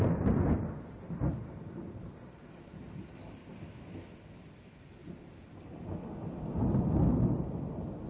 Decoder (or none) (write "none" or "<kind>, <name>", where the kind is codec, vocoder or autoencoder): none